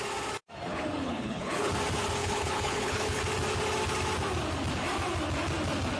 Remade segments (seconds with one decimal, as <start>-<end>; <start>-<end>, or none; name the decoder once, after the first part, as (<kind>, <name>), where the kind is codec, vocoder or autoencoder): 0.7-1.7 (codec, HILCodec); 2.2-3.2